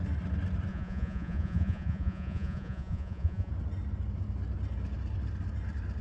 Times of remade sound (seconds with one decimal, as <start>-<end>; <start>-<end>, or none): 0.7-3.5